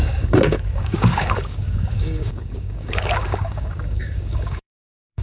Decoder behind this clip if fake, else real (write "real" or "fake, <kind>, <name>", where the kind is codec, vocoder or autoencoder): fake, codec, DAC